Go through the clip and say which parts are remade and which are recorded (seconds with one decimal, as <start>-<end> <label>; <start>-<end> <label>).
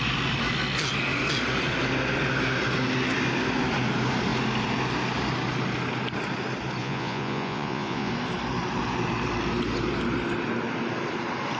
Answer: 0.0-6.8 recorded; 6.8-8.1 remade; 8.1-11.6 recorded